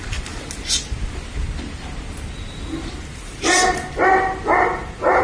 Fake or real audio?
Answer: real